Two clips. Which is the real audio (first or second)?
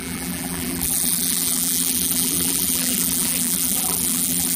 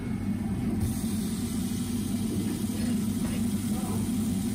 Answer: second